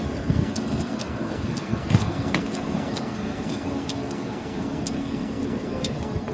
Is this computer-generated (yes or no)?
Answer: yes